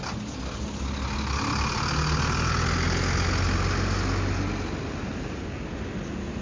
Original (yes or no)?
yes